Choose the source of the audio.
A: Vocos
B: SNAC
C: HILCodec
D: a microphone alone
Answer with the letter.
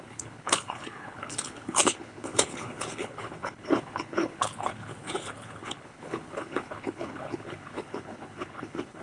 C